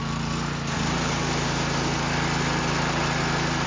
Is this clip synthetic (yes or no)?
no